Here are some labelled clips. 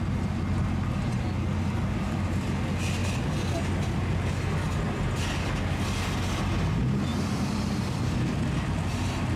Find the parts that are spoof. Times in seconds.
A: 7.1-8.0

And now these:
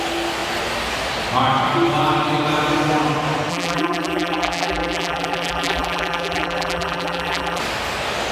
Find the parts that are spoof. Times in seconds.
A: 3.5-7.6

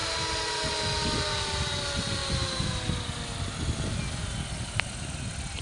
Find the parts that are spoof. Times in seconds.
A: none

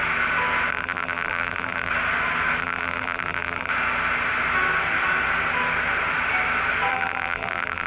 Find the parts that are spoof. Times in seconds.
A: 0.7-1.9; 2.6-3.7; 6.9-7.9

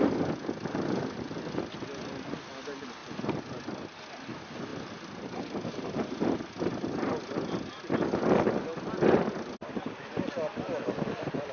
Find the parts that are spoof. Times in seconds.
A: none

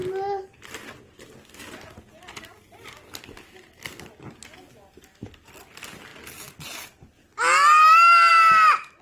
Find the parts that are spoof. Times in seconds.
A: none

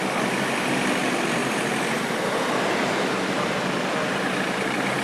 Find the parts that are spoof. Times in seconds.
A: 1.4-3.6